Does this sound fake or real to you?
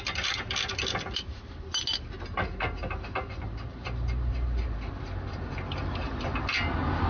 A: real